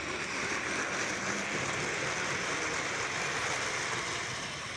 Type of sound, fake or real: real